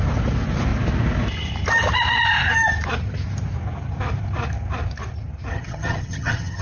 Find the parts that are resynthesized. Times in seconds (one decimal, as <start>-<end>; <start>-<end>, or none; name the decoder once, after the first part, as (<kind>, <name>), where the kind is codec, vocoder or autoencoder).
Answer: 5.5-6.6 (vocoder, HiFi-GAN)